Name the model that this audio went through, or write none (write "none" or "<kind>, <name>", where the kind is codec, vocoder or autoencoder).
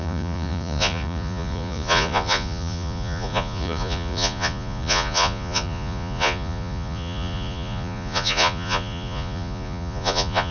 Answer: vocoder, Vocos